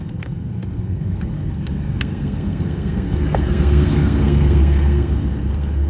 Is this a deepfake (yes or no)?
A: yes